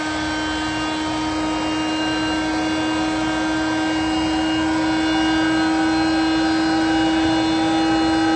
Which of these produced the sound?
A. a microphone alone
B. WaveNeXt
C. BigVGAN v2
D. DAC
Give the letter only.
A